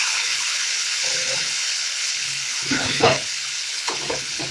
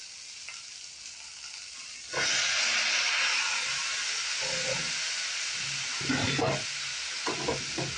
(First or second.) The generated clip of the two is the first